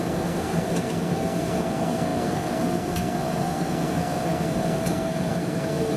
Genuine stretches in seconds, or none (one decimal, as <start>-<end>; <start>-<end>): none